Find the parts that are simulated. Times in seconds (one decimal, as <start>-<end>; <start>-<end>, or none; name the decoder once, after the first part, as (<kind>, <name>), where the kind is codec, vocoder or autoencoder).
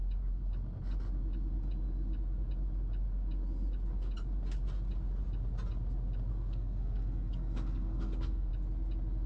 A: 6.3-8.5 (codec, SNAC)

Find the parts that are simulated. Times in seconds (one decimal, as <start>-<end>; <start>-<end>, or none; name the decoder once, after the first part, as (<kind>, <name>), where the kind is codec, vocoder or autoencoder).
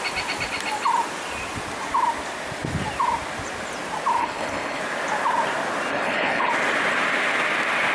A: 4.2-4.8 (codec, HILCodec); 5.9-6.5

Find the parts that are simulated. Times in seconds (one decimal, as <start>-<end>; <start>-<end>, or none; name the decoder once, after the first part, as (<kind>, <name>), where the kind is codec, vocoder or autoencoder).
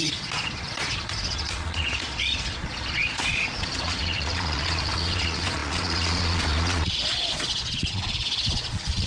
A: 0.0-9.1 (vocoder, Vocos)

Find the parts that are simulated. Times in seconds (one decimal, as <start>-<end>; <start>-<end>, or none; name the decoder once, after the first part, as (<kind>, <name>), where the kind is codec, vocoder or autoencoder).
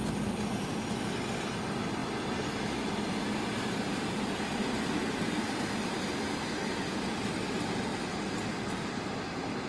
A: none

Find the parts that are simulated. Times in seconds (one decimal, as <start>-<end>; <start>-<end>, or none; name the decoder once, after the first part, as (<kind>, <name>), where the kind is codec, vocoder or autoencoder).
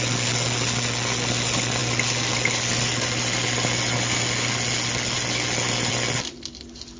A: none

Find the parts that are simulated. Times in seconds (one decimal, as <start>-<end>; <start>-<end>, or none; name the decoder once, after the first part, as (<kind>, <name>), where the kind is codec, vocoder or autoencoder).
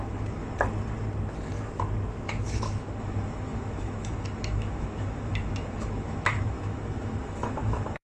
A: 0.0-0.4 (autoencoder, DAC-VAE); 2.1-8.0